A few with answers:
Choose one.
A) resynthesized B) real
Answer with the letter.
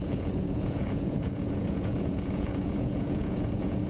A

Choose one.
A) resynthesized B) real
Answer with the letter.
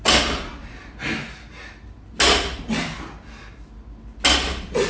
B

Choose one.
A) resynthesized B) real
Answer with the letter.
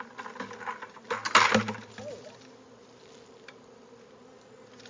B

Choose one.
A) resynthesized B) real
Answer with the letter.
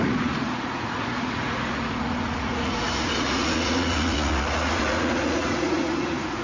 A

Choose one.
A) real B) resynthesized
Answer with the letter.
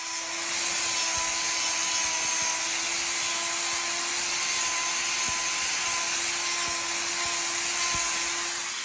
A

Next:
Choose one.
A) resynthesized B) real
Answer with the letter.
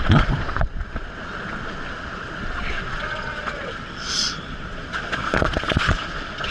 A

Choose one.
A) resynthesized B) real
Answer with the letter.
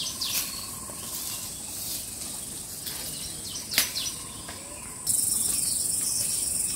B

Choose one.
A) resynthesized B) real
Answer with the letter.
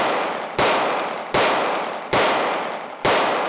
B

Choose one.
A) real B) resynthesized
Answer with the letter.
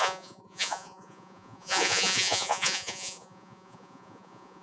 B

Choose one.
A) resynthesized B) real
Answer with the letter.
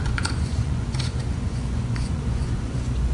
A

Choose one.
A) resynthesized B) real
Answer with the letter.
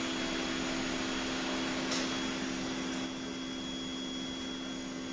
B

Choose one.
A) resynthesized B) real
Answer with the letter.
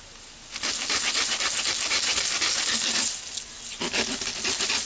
B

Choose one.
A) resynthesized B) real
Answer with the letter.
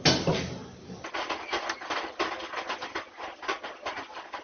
B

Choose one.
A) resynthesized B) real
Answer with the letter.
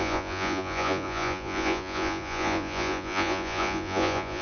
A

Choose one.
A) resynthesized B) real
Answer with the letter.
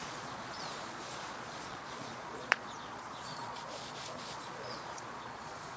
A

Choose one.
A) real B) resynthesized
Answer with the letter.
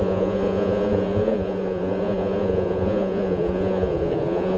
B